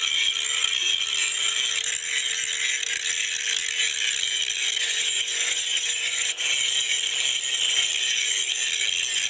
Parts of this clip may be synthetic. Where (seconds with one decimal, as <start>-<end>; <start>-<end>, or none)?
4.8-6.4